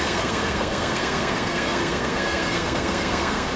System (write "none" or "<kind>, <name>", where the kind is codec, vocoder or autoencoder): codec, SNAC